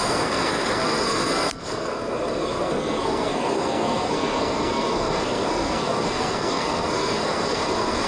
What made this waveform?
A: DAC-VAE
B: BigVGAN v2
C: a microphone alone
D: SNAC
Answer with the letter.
D